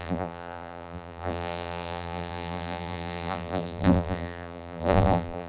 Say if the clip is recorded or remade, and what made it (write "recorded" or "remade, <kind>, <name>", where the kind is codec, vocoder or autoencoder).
remade, vocoder, BigVGAN v2